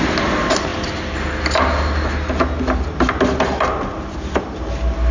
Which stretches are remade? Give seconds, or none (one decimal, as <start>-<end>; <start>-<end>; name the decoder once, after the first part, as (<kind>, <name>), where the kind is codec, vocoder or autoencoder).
none